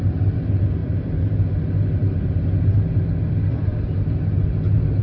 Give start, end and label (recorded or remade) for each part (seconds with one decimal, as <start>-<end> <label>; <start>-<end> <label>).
0.0-0.8 recorded; 0.8-1.5 remade; 1.5-5.0 recorded